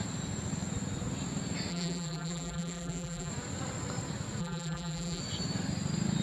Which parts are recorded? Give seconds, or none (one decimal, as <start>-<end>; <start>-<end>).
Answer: 0.0-1.7; 3.3-4.4; 5.2-6.2